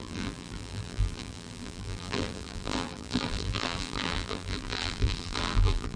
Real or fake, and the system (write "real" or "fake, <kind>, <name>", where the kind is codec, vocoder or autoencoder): fake, vocoder, BigVGAN v2